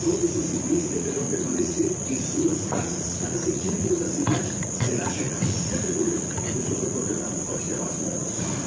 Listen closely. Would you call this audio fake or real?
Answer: fake